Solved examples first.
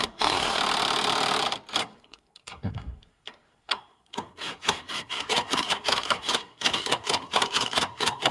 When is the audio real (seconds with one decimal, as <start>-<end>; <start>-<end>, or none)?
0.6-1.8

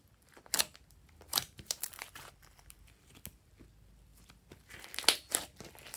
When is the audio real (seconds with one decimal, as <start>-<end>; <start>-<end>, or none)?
0.0-1.3; 2.1-6.0

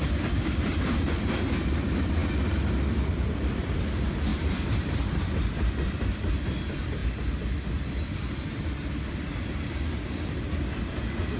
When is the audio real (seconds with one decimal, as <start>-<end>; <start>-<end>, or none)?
2.2-3.1; 7.0-8.1

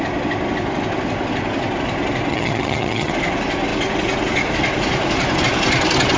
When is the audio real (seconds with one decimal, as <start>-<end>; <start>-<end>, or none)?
0.0-2.3; 3.1-6.2